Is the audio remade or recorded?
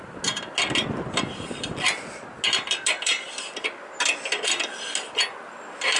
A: recorded